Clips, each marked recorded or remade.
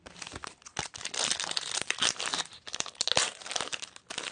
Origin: recorded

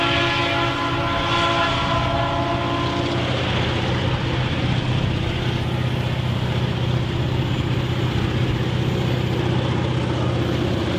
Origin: recorded